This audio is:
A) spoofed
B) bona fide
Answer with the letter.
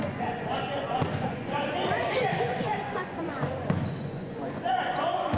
A